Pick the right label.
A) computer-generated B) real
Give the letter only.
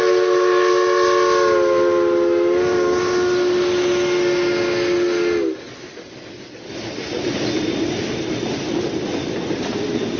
B